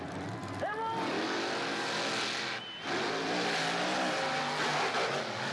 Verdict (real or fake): real